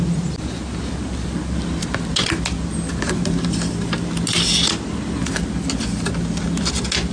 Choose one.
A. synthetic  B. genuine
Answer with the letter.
B